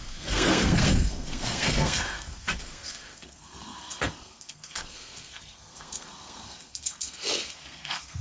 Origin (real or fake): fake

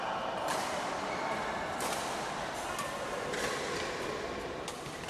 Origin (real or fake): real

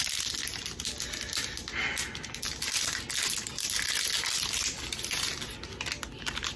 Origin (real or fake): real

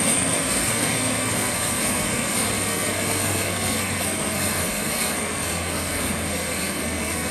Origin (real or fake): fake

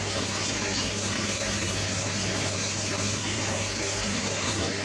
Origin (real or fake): fake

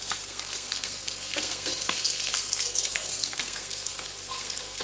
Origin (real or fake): fake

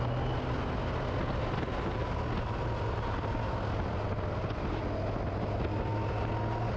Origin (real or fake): real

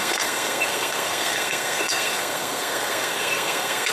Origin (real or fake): fake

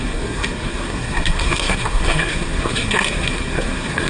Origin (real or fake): fake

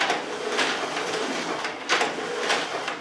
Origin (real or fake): real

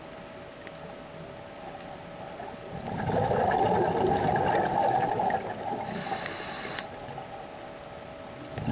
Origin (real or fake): real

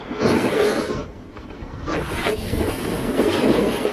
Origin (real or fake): fake